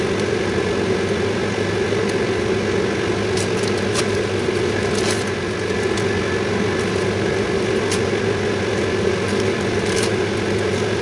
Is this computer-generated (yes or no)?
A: no